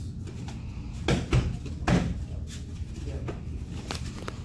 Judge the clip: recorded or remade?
recorded